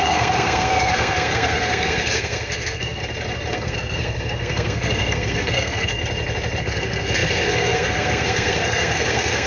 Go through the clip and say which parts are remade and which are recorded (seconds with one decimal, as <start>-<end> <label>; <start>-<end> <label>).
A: 0.0-3.0 remade; 3.0-3.5 recorded; 3.5-6.0 remade; 6.0-6.6 recorded; 6.6-9.5 remade

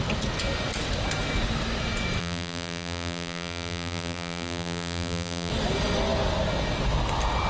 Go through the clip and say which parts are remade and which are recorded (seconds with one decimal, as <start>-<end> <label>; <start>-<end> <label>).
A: 0.0-2.2 recorded; 2.2-5.5 remade; 5.5-7.5 recorded

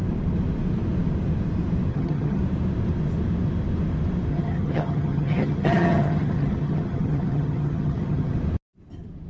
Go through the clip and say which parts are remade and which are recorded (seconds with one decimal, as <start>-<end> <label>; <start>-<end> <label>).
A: 0.0-1.9 recorded; 1.9-2.4 remade; 2.4-4.3 recorded; 4.3-8.4 remade; 8.4-9.3 recorded

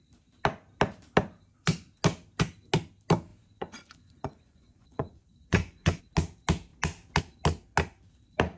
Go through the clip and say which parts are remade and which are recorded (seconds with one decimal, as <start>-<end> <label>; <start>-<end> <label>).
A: 0.0-3.3 recorded; 3.3-6.0 remade; 6.0-8.6 recorded

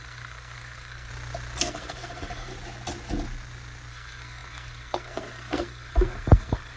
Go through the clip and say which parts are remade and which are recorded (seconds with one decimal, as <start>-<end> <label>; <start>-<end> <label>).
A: 0.0-1.1 remade; 1.1-1.6 recorded; 1.6-2.5 remade; 2.5-3.9 recorded; 3.9-6.8 remade